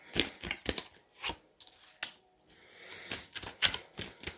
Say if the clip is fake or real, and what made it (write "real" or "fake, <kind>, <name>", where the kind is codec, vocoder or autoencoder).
real